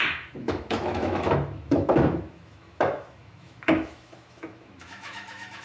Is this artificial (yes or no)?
yes